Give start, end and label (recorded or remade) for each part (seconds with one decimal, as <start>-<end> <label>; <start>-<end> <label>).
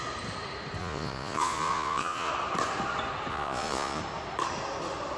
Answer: 0.0-0.8 recorded; 0.8-2.3 remade; 2.3-3.3 recorded; 3.3-4.0 remade; 4.0-5.2 recorded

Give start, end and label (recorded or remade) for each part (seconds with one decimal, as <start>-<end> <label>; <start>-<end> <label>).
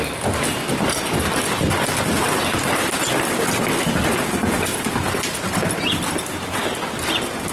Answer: 0.0-7.5 recorded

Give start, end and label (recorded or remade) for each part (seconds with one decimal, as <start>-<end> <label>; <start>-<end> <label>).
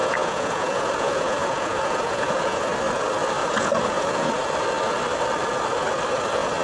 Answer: 0.0-2.6 remade; 2.6-3.4 recorded; 3.4-4.3 remade; 4.3-6.6 recorded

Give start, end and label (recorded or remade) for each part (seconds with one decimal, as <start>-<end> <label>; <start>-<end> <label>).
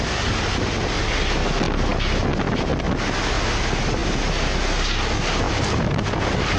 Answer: 0.0-6.6 recorded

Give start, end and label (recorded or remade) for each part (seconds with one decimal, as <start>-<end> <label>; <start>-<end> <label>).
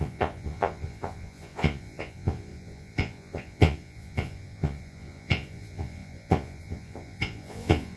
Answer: 0.0-8.0 remade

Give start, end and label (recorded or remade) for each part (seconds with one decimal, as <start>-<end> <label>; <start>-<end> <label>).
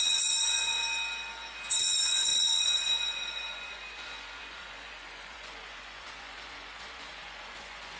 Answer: 0.0-0.8 remade; 0.8-1.7 recorded; 1.7-8.0 remade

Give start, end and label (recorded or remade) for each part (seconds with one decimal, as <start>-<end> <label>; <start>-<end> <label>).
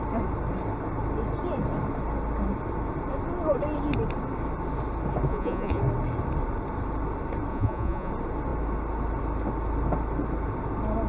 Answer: 0.0-5.3 recorded; 5.3-5.8 remade; 5.8-7.5 recorded; 7.5-8.1 remade; 8.1-11.1 recorded